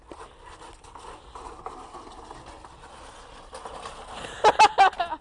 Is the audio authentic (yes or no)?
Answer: yes